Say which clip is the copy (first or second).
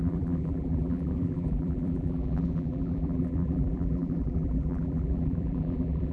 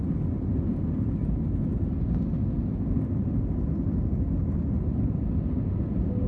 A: first